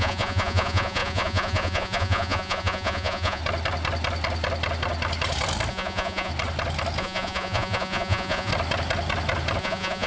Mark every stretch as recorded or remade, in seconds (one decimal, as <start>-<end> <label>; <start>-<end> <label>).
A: 0.0-3.4 remade; 3.4-5.7 recorded; 5.7-6.3 remade; 6.3-7.0 recorded; 7.0-8.5 remade; 8.5-9.6 recorded; 9.6-10.1 remade